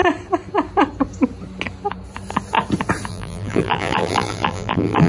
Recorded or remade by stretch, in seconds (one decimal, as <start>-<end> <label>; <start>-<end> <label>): 0.0-3.1 recorded; 3.1-5.1 remade